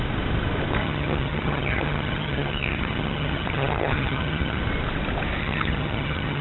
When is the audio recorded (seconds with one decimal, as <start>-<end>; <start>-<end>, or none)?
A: 0.0-0.8; 4.6-5.4